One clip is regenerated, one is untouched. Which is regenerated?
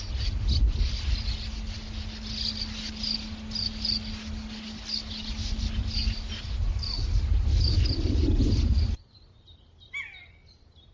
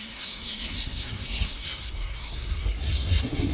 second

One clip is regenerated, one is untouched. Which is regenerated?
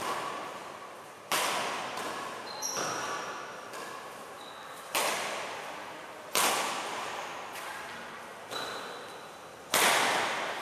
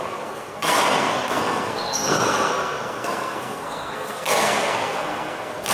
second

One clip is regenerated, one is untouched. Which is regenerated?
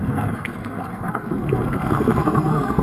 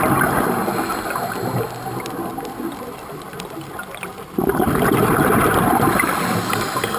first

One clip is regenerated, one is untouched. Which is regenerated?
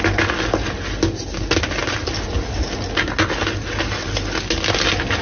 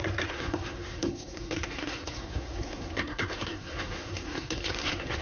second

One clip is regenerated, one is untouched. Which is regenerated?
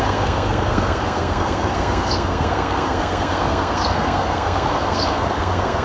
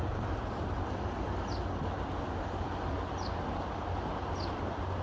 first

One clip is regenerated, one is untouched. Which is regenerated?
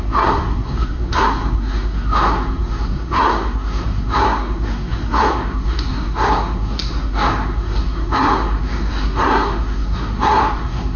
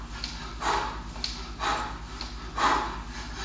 first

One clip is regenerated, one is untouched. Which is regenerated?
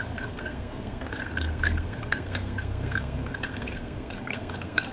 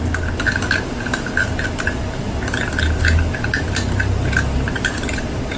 first